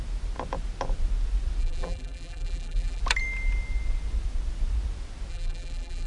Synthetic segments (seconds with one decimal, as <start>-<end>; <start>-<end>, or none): 1.6-3.0; 5.3-6.1